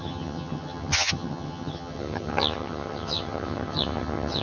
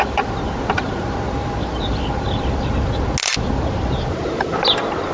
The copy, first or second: first